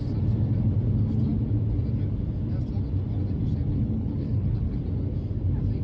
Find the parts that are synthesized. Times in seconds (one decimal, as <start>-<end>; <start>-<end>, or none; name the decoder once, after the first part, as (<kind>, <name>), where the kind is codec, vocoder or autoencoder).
3.7-4.8 (codec, HILCodec)